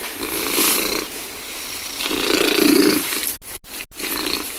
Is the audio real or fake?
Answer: real